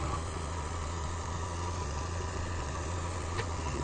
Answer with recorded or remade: remade